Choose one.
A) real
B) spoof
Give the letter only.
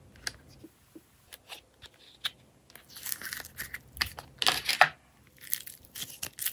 A